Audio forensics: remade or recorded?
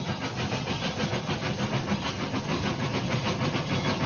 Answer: recorded